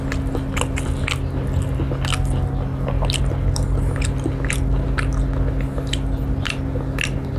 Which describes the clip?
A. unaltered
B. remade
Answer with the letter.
A